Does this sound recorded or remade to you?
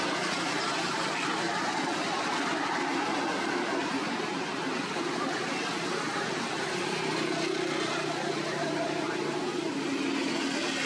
recorded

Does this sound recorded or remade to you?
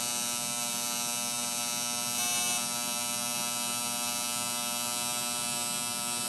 recorded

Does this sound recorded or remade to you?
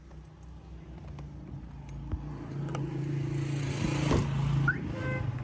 recorded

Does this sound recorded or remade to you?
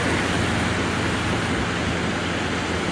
recorded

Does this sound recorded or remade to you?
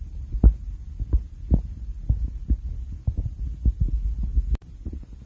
recorded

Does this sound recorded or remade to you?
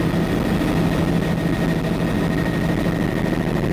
recorded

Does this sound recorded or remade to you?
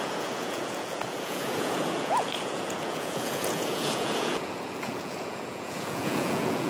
remade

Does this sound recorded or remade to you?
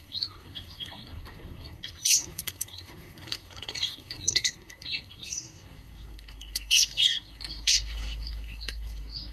remade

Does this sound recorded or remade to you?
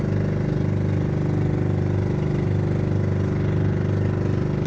recorded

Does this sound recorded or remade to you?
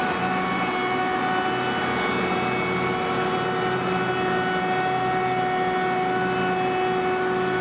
recorded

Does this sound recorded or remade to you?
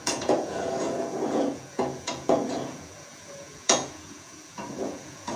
remade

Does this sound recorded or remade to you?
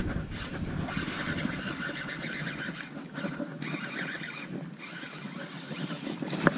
recorded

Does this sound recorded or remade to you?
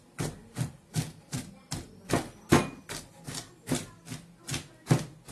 recorded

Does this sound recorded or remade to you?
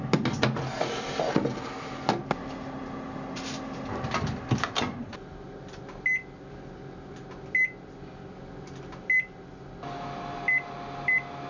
recorded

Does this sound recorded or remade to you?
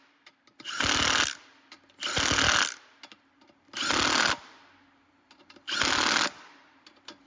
recorded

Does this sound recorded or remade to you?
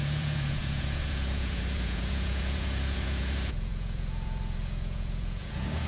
remade